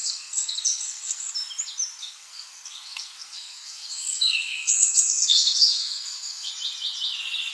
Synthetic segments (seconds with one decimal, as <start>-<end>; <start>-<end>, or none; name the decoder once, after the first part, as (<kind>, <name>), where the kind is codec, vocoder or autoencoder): 0.0-1.3 (codec, SNAC); 2.0-6.5